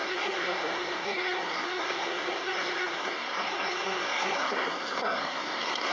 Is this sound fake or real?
fake